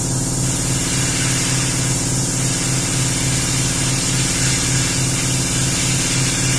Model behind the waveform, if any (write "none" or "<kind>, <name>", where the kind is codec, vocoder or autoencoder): none